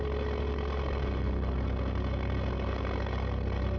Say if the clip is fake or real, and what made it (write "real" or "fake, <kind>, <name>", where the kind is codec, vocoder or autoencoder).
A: real